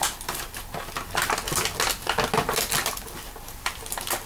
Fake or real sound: real